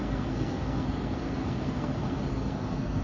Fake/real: fake